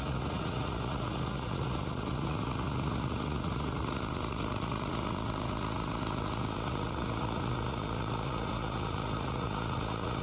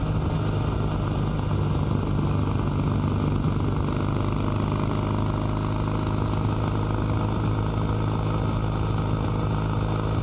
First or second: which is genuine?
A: second